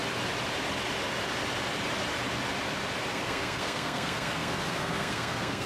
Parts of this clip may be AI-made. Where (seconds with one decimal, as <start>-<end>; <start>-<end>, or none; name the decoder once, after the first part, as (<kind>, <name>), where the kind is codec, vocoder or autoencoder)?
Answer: 3.1-5.7 (codec, SNAC)